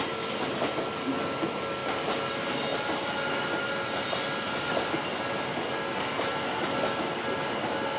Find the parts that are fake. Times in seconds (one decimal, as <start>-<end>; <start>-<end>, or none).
none

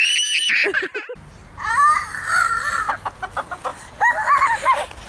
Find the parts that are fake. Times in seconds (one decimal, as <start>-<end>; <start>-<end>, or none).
none

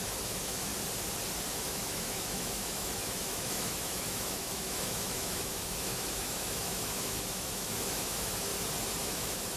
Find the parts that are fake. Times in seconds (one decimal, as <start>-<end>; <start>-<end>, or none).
0.0-0.7; 1.5-8.5; 9.0-9.6

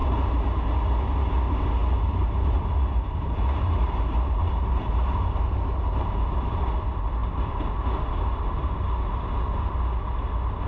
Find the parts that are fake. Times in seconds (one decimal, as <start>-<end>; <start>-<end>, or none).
1.8-6.1

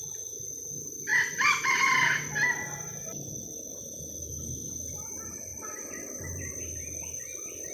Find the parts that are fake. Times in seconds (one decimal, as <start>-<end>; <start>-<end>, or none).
5.5-6.6

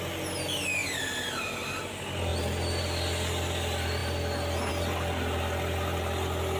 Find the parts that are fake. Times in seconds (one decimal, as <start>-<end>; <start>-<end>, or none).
0.8-1.8

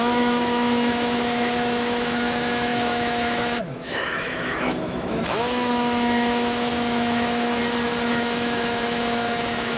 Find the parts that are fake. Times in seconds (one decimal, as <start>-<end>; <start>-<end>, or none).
0.0-7.6; 8.1-9.8

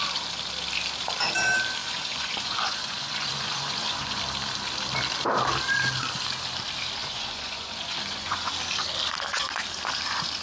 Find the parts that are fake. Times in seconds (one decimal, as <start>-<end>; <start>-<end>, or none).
1.8-4.2; 7.0-8.5